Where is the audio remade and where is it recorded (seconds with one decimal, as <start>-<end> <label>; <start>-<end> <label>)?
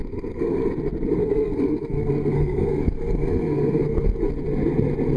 0.0-0.7 remade; 0.7-1.2 recorded; 1.2-4.3 remade; 4.3-5.2 recorded